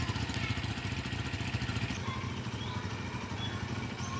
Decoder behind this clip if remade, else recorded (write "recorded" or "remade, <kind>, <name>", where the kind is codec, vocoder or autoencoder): recorded